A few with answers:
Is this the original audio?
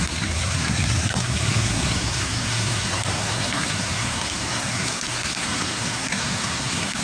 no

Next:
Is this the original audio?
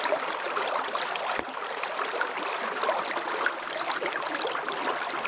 no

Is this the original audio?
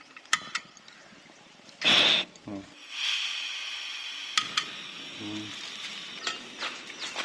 yes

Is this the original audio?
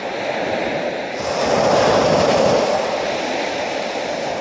yes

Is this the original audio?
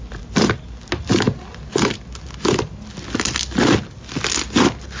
yes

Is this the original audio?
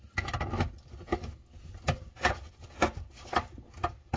yes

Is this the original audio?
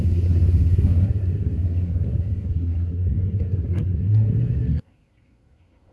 no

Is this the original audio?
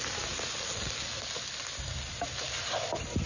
yes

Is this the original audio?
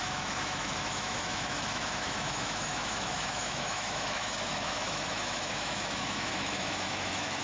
no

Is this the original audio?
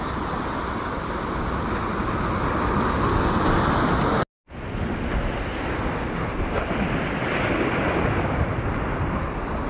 yes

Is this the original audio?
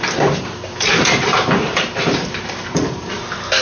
no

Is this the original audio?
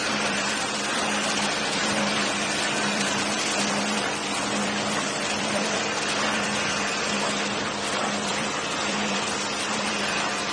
no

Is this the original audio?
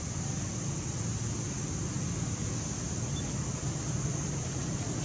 yes